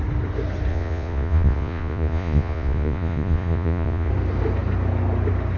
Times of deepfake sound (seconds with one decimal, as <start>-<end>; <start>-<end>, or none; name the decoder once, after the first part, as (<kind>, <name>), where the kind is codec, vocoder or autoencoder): 0.7-4.1 (vocoder, Vocos)